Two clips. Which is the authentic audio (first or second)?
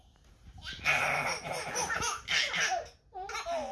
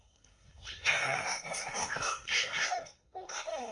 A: first